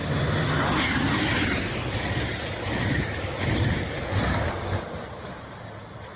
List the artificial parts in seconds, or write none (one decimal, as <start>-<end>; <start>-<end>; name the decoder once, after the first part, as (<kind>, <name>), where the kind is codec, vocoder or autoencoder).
none